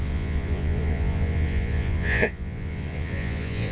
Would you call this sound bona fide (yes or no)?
no